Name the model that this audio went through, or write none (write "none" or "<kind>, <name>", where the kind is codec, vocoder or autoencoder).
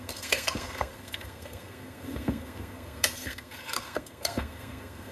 codec, SNAC